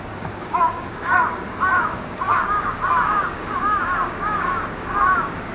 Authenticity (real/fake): fake